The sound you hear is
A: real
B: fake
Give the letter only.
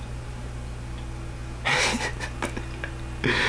A